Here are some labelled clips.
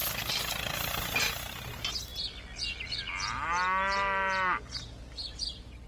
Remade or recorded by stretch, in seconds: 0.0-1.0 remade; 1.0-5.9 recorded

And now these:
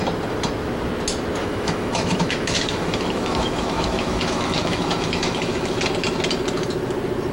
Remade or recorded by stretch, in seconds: 0.0-1.4 recorded; 1.4-5.8 remade; 5.8-7.3 recorded

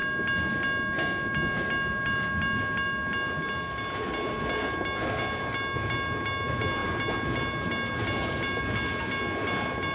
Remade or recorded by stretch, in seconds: 0.0-9.9 recorded

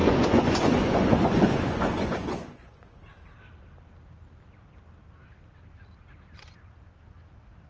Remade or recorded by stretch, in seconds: 0.0-3.0 remade; 3.0-7.7 recorded